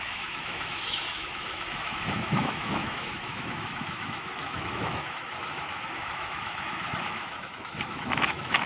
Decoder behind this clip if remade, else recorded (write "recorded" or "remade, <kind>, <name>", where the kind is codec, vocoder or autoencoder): remade, autoencoder, DAC-VAE